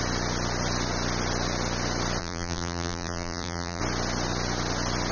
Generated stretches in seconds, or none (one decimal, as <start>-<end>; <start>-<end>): 2.2-3.8